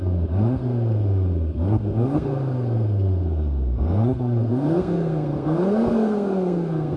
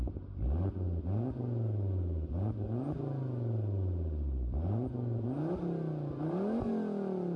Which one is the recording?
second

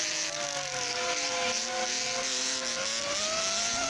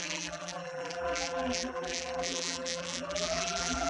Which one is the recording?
first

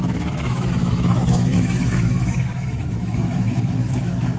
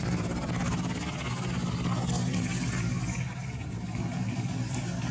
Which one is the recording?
second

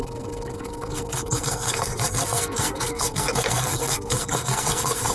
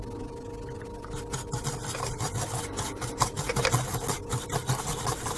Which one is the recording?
second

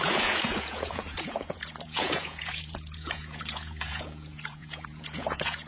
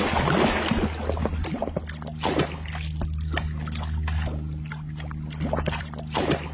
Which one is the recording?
second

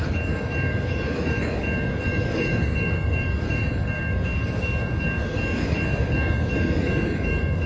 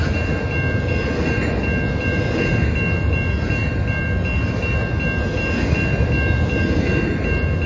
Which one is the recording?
second